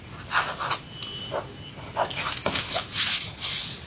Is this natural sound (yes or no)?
yes